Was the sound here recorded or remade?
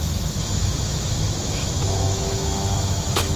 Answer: remade